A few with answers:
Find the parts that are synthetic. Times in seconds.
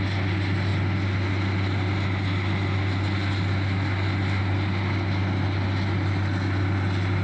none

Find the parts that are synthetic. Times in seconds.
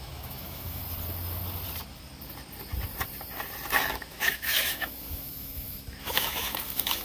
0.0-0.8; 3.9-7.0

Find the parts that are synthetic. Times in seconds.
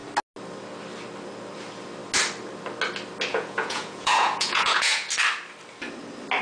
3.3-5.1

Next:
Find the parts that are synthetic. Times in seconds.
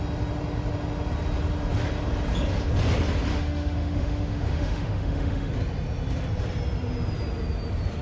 3.3-5.5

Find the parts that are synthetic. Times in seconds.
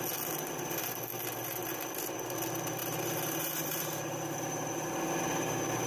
2.8-4.9